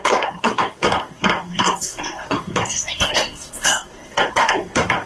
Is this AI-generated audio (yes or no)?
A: yes